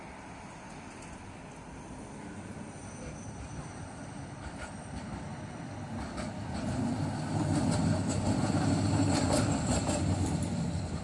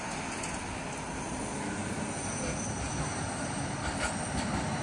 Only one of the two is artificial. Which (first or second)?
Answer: first